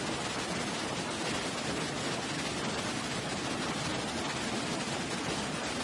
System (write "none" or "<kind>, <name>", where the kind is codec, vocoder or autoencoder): none